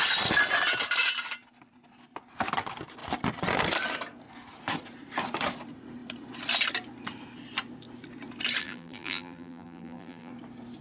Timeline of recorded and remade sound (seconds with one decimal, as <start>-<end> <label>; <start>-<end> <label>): 0.0-8.6 recorded; 8.6-10.3 remade; 10.3-10.8 recorded